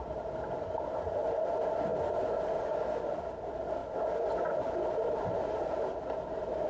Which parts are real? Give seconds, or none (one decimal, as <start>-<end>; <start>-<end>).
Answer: 0.0-6.7